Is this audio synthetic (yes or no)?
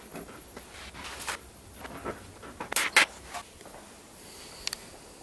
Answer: no